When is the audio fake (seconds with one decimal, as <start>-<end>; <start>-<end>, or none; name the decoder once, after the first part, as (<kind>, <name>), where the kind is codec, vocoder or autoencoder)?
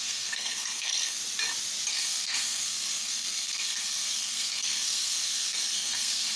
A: 0.0-1.2 (codec, SNAC); 1.9-6.4